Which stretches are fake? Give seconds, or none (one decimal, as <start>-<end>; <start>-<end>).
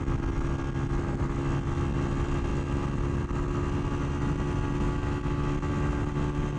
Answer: none